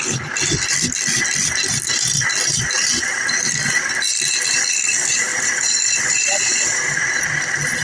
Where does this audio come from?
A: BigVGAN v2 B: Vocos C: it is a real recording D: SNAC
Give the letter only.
C